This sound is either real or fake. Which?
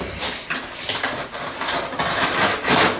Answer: real